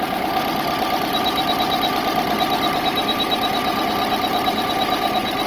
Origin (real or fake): real